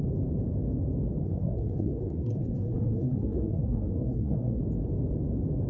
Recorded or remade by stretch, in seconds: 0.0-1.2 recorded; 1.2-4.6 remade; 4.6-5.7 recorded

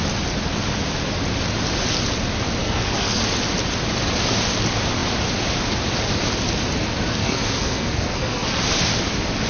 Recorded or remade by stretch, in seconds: 0.0-2.6 recorded; 2.6-3.2 remade; 3.2-7.2 recorded; 7.2-8.6 remade; 8.6-9.5 recorded

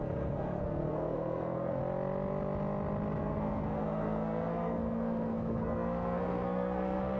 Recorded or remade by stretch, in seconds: 0.0-1.8 remade; 1.8-3.2 recorded; 3.2-7.2 remade

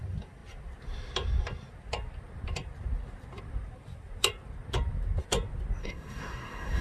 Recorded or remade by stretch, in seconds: 0.0-5.8 recorded; 5.8-6.8 remade

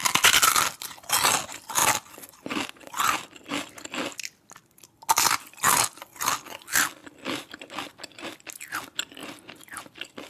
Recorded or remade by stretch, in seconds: 0.0-10.3 recorded